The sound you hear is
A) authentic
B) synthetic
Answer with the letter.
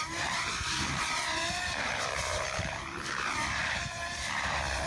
B